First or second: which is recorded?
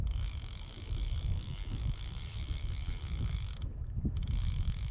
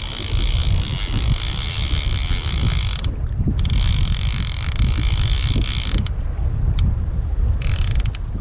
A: second